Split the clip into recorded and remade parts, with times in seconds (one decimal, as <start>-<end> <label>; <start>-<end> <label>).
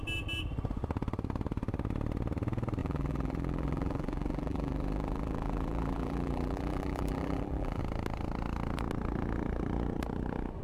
0.0-2.8 recorded; 2.8-7.8 remade; 7.8-10.6 recorded